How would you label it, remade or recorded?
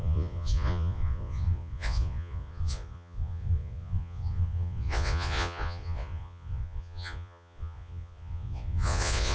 remade